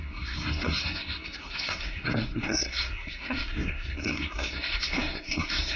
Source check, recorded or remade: remade